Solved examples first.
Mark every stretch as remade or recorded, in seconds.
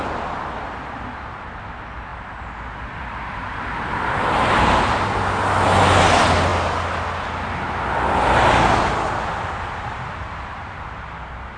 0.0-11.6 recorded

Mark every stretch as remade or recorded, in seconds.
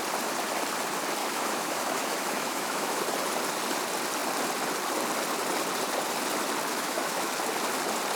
0.0-1.2 recorded; 1.2-3.0 remade; 3.0-6.7 recorded; 6.7-7.3 remade; 7.3-8.2 recorded